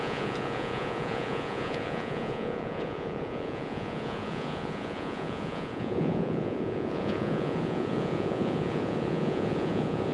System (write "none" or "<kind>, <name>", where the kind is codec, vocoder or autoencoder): vocoder, Vocos